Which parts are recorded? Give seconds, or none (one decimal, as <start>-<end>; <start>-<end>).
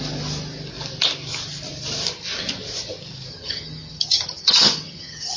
0.0-3.3